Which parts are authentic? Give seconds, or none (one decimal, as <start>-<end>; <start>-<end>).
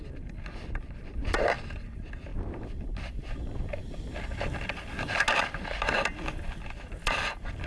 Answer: 0.0-7.7